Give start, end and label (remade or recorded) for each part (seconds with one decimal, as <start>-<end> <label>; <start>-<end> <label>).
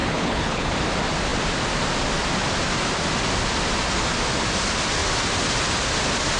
0.0-0.7 remade; 0.7-6.4 recorded